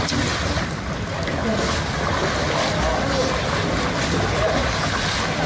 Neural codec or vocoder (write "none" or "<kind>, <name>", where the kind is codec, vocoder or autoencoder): none